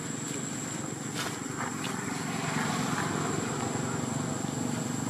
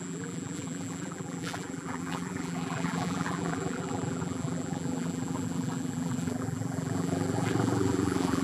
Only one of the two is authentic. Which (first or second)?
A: first